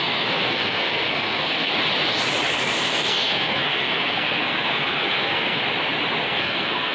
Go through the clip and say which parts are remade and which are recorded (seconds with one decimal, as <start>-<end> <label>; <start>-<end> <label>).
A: 0.0-1.7 remade; 1.7-2.5 recorded; 2.5-5.6 remade; 5.6-6.2 recorded; 6.2-6.9 remade